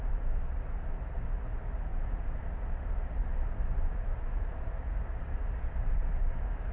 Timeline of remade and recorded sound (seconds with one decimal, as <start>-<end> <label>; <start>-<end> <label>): 0.0-1.9 recorded; 1.9-5.9 remade; 5.9-6.7 recorded